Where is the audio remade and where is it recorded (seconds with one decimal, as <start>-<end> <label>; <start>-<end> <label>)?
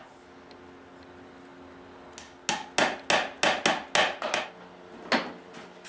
0.0-5.9 recorded